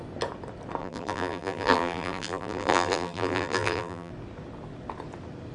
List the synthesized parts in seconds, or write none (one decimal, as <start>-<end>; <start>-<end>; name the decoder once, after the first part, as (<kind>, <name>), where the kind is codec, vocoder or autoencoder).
0.8-4.1 (vocoder, BigVGAN v2)